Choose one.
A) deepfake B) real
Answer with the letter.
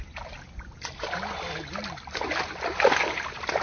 B